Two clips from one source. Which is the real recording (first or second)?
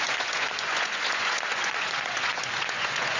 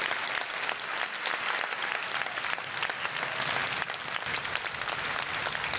second